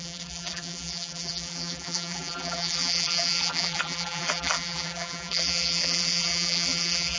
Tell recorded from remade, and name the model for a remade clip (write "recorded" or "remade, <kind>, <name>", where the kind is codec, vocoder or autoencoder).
remade, vocoder, BigVGAN v2